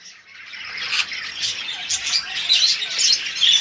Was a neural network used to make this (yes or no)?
no